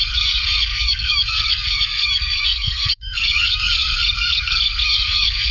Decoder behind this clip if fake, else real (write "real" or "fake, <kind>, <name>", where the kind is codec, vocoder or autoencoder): fake, codec, SNAC